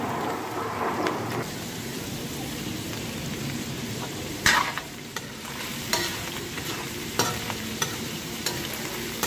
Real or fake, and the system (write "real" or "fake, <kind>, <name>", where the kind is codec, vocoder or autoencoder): fake, vocoder, BigVGAN v2